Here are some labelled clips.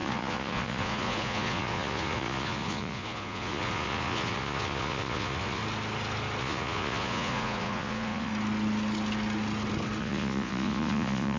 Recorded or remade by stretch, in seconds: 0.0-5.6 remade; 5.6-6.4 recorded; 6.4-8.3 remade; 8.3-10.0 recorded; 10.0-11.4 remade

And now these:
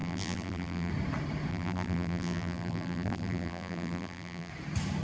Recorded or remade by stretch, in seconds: 0.0-0.9 remade; 0.9-1.5 recorded; 1.5-4.5 remade; 4.5-5.0 recorded